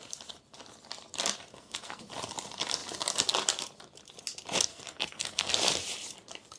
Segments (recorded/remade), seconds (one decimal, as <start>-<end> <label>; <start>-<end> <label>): 0.0-1.5 recorded; 1.5-2.0 remade; 2.0-4.7 recorded; 4.7-5.5 remade; 5.5-6.6 recorded